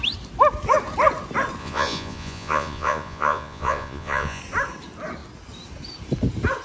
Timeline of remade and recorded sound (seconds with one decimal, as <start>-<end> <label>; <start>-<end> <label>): 0.0-1.6 recorded; 1.6-4.4 remade; 4.4-6.6 recorded